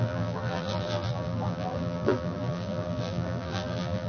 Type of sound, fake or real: fake